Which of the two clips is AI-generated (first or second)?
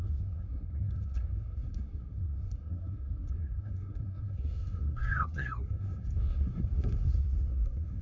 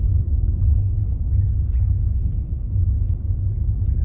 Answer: first